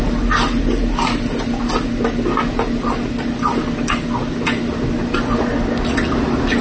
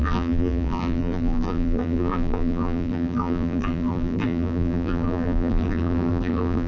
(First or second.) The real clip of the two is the first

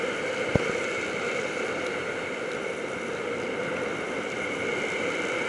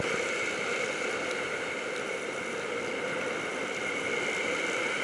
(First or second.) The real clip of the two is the first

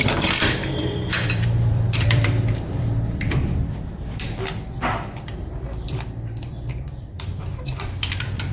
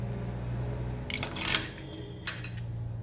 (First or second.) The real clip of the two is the second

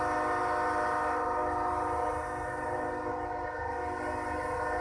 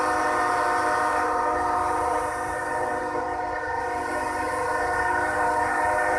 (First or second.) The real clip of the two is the first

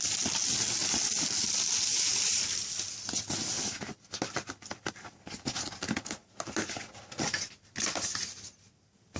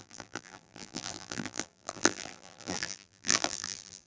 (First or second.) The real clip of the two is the first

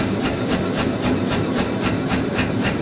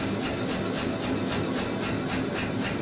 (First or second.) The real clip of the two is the second